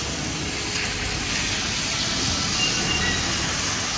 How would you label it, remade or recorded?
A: recorded